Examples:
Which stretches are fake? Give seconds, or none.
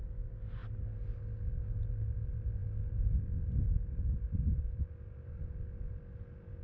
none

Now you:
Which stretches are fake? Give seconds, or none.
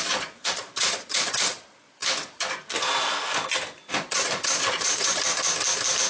0.0-2.0 (vocoder, Vocos); 4.0-5.2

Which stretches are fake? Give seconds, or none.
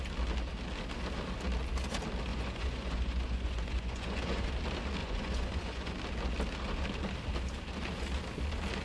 2.3-4.5 (vocoder, Vocos); 5.0-5.9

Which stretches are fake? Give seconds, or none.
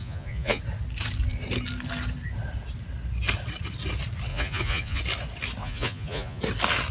0.0-0.6 (vocoder, Vocos); 4.3-5.0; 5.6-6.4